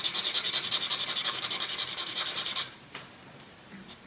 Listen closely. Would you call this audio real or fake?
fake